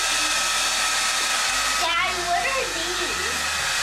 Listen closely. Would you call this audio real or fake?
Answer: real